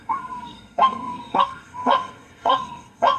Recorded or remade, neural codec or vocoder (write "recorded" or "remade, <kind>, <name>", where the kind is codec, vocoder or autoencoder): remade, codec, SNAC